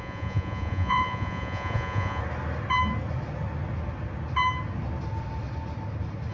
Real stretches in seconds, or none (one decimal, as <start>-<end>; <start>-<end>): 2.2-6.3